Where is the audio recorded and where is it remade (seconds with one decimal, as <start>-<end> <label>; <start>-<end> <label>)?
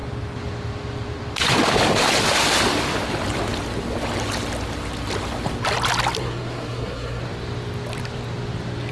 0.0-6.2 recorded; 6.2-7.2 remade; 7.2-8.9 recorded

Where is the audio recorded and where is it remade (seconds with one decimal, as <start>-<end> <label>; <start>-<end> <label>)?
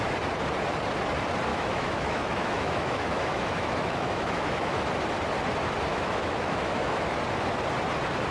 0.0-1.5 recorded; 1.5-4.8 remade; 4.8-5.9 recorded; 5.9-7.2 remade; 7.2-8.3 recorded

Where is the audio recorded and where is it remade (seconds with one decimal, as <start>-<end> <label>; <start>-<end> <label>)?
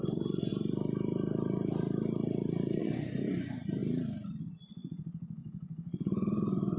0.0-0.5 remade; 0.5-2.8 recorded; 2.8-3.8 remade; 3.8-4.7 recorded; 4.7-6.8 remade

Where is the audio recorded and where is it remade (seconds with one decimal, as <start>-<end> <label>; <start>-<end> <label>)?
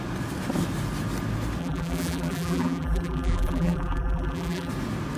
0.0-1.6 recorded; 1.6-4.7 remade; 4.7-5.2 recorded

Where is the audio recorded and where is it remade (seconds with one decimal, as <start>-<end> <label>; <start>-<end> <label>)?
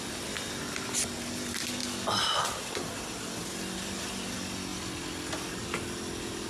0.0-6.5 recorded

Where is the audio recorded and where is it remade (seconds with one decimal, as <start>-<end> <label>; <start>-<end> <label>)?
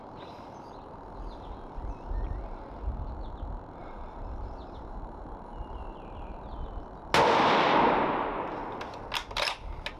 0.0-3.8 recorded; 3.8-6.3 remade; 6.3-10.0 recorded